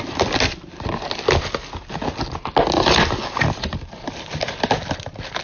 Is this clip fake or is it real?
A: real